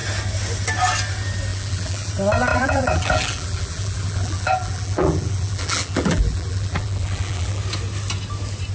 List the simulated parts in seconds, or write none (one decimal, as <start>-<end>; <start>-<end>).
1.5-2.1; 2.5-7.6